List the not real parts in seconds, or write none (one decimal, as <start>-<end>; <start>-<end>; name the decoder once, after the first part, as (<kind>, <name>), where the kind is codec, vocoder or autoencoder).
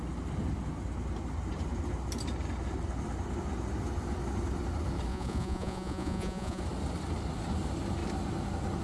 5.1-6.6 (vocoder, Vocos)